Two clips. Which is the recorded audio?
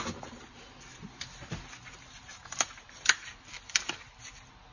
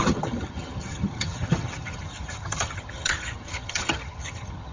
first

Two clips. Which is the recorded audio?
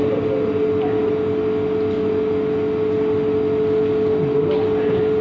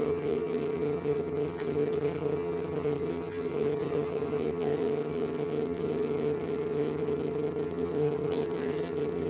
first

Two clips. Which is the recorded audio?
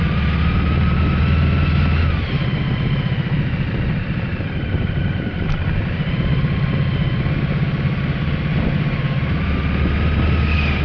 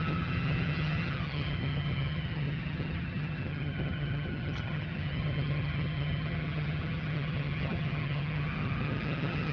first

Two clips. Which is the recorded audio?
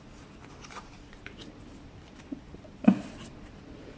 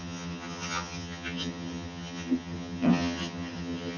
first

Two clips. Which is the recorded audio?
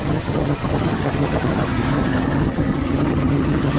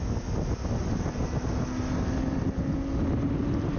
second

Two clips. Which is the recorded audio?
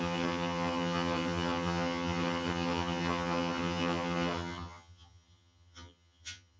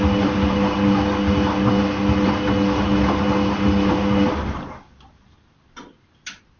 second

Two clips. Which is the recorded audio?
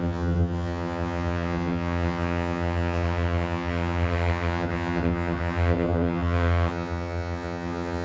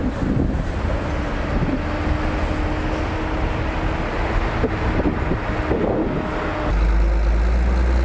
second